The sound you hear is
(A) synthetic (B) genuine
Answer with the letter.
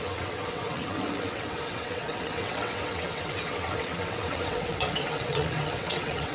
A